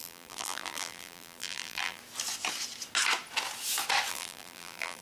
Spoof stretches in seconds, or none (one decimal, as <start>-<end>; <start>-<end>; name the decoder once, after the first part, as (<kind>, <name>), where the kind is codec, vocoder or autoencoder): 0.0-2.0 (vocoder, BigVGAN v2); 4.1-5.0